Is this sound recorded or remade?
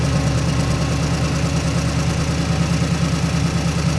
recorded